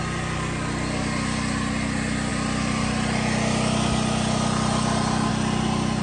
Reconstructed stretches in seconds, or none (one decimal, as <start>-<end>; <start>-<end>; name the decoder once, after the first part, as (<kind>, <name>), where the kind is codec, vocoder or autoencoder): none